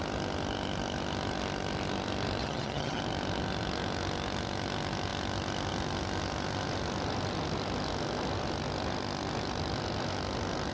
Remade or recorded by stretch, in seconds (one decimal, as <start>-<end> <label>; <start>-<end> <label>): 0.0-2.4 recorded; 2.4-3.0 remade; 3.0-10.7 recorded